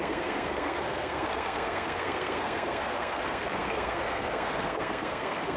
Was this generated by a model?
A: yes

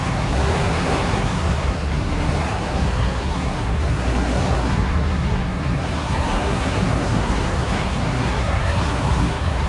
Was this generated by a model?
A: yes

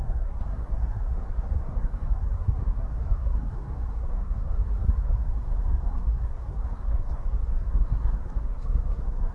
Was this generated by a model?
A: yes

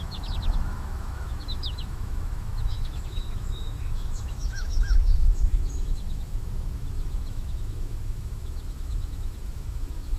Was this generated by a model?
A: yes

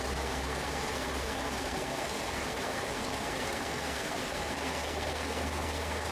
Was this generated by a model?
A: yes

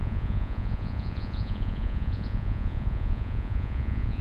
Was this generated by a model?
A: yes